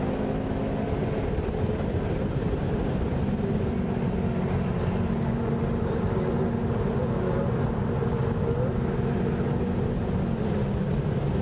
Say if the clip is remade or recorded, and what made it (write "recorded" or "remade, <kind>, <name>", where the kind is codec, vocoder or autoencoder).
recorded